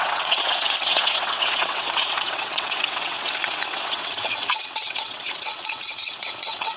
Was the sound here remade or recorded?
remade